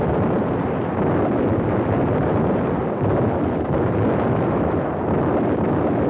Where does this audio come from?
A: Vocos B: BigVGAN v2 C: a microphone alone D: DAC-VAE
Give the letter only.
B